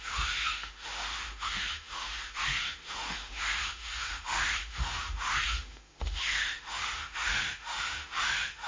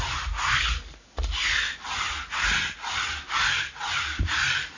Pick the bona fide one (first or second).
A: second